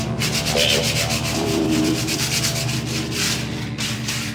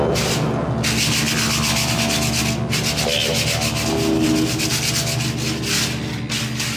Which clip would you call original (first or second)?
second